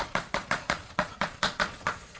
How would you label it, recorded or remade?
remade